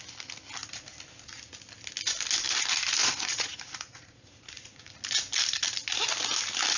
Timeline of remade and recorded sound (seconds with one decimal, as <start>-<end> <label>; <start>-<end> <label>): 0.0-3.0 recorded; 3.0-4.9 remade; 4.9-6.8 recorded